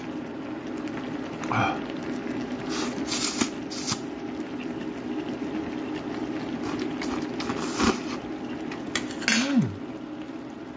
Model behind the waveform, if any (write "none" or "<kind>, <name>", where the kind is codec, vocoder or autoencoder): none